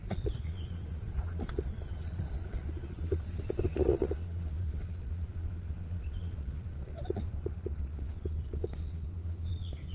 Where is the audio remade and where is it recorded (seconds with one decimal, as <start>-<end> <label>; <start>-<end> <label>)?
0.0-9.9 remade